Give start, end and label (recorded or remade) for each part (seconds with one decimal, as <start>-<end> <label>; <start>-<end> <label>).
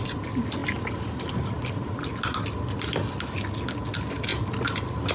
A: 0.0-5.1 recorded